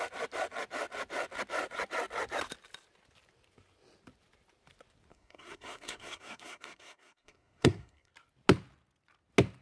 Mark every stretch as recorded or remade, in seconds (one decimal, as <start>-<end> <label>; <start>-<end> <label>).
0.0-5.1 recorded; 5.1-8.1 remade; 8.1-9.6 recorded